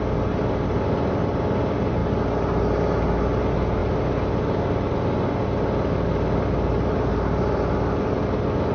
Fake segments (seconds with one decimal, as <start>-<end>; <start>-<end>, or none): none